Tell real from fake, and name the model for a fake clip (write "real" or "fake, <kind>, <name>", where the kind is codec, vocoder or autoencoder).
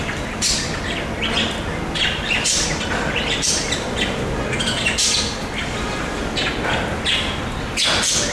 real